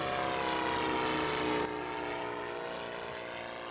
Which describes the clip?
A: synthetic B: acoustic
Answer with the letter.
B